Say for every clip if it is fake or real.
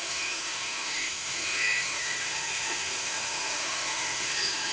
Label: fake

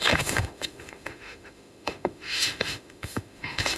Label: fake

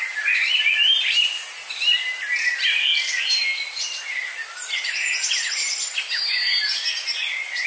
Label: real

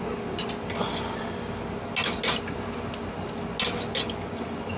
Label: real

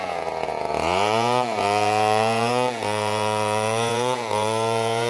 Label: fake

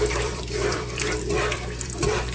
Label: fake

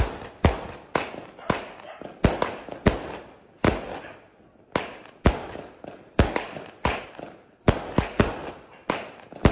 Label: real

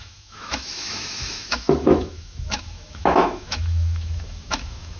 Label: fake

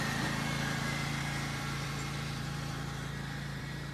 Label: fake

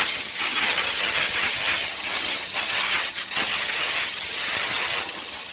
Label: fake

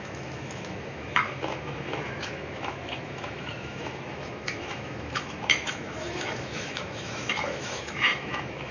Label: fake